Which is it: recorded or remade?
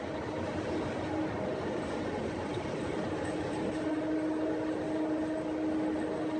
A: recorded